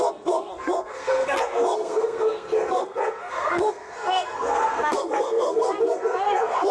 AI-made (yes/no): yes